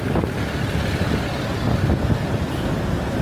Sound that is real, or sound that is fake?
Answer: real